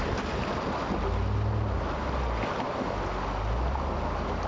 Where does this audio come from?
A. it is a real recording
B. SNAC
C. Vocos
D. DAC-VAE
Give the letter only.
A